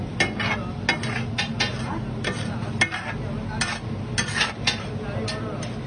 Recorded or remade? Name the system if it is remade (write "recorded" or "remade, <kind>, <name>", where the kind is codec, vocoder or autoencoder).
recorded